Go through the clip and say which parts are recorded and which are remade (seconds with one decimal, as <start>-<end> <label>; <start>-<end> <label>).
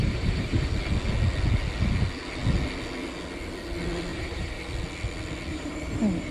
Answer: 0.0-0.7 remade; 0.7-4.1 recorded; 4.1-4.6 remade; 4.6-5.5 recorded; 5.5-6.3 remade